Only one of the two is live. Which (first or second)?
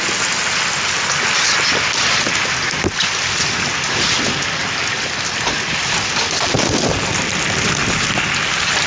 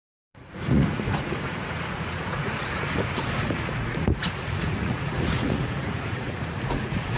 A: first